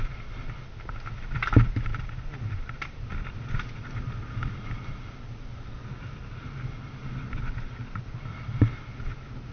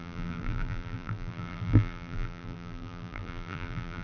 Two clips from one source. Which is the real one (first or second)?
first